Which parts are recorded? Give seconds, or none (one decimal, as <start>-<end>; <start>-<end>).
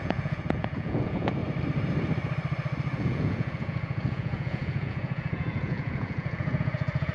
1.4-3.0